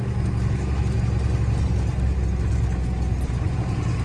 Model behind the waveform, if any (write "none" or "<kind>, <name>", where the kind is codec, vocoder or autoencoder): none